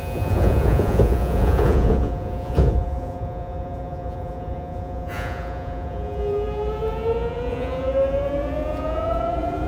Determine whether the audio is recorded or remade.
remade